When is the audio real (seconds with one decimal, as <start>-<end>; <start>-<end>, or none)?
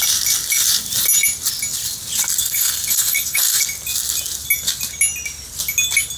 0.0-2.4; 3.6-6.2